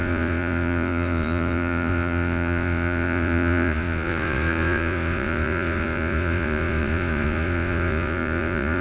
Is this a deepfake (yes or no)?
yes